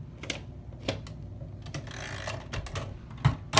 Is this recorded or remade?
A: recorded